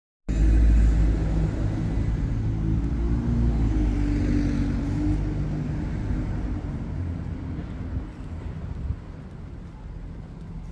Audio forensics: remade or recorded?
recorded